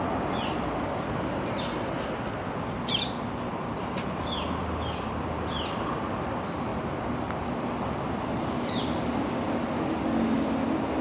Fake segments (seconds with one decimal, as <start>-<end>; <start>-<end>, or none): none